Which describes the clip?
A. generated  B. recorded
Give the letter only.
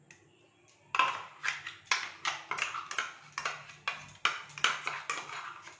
B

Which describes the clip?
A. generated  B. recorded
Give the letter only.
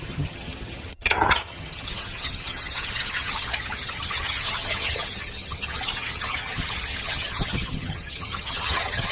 A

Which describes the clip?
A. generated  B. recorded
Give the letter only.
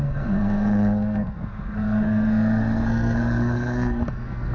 A